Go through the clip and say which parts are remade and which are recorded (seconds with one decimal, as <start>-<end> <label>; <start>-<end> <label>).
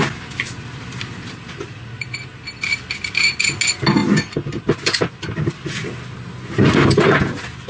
0.0-7.7 recorded